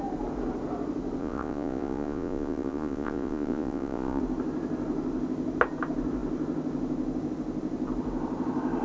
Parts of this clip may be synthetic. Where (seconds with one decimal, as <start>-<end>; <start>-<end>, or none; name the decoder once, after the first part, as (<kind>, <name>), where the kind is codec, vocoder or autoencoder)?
1.2-4.2 (vocoder, Vocos)